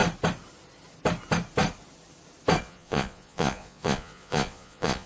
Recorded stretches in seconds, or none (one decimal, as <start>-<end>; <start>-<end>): 0.0-2.6

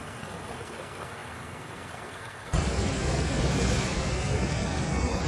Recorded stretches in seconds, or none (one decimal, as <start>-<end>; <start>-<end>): none

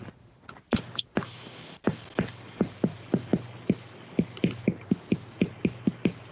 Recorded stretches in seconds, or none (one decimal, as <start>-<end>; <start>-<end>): 0.0-6.3

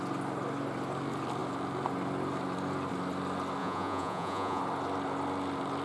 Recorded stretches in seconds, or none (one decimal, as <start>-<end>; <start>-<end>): 0.0-3.6; 4.6-5.8